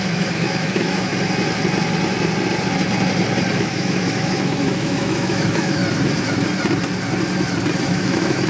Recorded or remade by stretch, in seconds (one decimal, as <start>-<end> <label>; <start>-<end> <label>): 0.0-1.1 remade; 1.1-3.5 recorded; 3.5-5.8 remade; 5.8-7.9 recorded; 7.9-8.5 remade